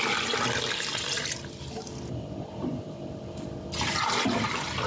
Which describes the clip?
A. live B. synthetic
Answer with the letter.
A